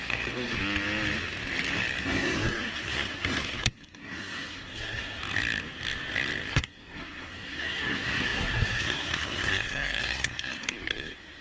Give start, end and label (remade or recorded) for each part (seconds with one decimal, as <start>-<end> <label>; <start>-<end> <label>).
0.0-0.6 remade; 0.6-2.0 recorded; 2.0-5.2 remade; 5.2-6.5 recorded; 6.5-11.4 remade